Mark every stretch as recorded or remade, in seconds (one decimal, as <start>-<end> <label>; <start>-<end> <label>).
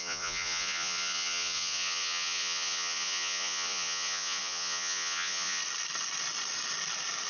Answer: 0.0-5.6 remade; 5.6-7.3 recorded